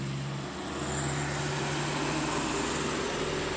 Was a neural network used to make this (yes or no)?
no